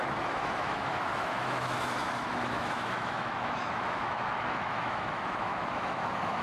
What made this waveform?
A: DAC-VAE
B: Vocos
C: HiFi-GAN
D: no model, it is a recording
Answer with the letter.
A